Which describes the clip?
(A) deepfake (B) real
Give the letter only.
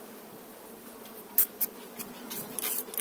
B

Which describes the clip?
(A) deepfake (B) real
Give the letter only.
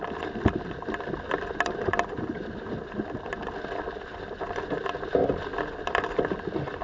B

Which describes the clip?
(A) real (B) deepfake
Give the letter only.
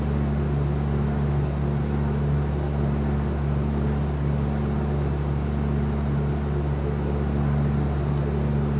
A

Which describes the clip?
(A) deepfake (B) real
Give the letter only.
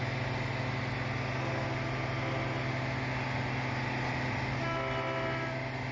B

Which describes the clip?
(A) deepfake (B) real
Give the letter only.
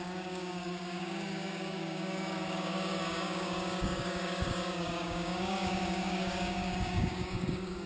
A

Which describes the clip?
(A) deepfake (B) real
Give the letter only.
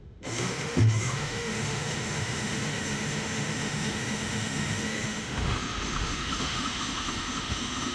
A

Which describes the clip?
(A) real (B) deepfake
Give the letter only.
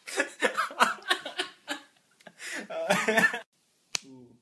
A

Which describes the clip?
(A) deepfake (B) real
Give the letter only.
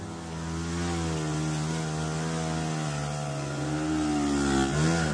B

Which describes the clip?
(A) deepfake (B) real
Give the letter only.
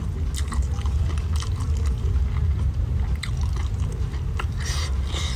B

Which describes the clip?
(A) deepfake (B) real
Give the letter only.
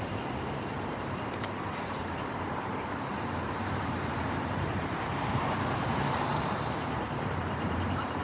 A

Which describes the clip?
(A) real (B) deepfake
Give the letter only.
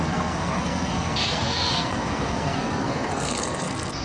B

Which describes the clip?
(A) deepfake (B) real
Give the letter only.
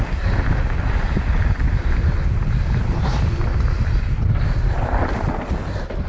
B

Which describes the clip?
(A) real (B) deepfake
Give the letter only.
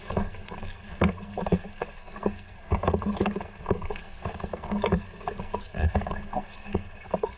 B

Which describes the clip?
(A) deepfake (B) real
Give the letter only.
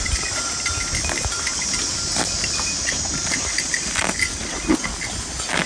B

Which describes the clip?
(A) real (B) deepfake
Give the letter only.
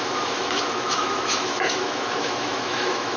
B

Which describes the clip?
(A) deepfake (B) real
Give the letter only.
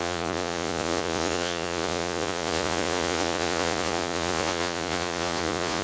A